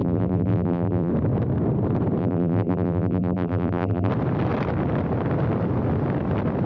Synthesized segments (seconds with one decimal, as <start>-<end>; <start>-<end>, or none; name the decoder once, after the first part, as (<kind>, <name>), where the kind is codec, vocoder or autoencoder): 0.0-1.1 (vocoder, BigVGAN v2); 2.2-4.1